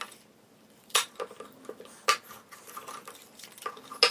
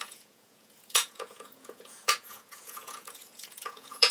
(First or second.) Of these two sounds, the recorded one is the first